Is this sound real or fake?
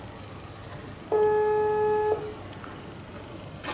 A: real